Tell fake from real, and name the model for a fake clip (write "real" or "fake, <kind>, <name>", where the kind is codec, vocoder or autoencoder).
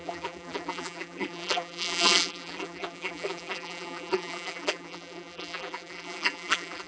fake, vocoder, BigVGAN v2